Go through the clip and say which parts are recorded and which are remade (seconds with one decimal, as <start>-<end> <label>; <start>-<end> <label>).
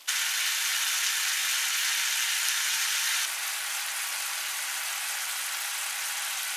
0.0-6.6 recorded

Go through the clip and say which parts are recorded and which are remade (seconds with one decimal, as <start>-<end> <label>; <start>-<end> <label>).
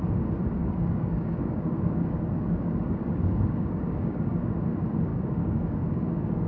0.0-0.6 recorded; 0.6-4.5 remade; 4.5-5.1 recorded; 5.1-6.5 remade